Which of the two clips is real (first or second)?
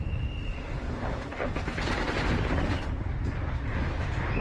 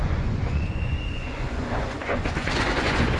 first